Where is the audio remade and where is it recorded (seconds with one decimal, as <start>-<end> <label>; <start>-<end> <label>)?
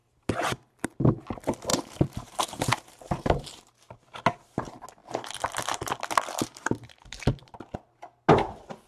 0.0-1.7 recorded; 1.7-3.7 remade; 3.7-8.9 recorded